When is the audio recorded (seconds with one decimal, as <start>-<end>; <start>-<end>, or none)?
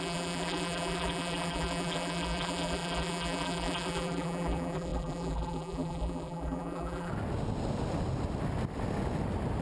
7.1-9.6